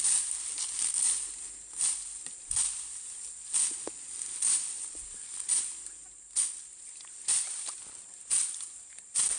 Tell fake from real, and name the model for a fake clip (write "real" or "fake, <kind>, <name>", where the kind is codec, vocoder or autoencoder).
real